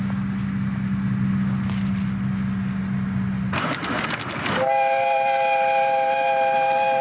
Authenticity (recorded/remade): recorded